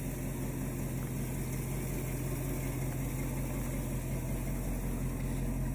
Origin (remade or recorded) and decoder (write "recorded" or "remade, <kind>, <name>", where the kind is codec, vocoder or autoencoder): recorded